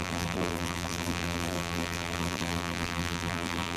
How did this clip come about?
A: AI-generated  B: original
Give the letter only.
A